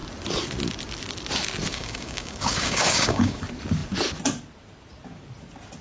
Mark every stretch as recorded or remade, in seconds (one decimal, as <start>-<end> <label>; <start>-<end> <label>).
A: 0.0-1.7 recorded; 1.7-3.4 remade; 3.4-5.8 recorded